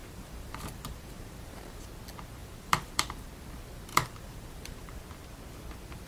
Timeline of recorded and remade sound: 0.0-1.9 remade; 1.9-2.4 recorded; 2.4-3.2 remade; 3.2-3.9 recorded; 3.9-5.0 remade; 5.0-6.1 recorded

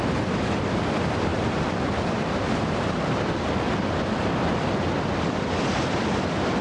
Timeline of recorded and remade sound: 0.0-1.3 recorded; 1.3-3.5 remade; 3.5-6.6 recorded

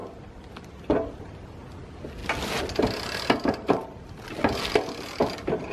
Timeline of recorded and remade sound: 0.0-5.7 recorded

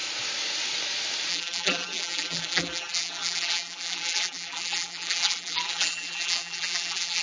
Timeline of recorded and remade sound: 0.0-1.3 recorded; 1.3-7.2 remade